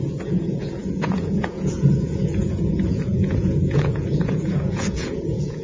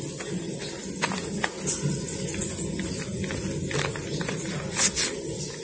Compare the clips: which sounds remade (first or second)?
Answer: first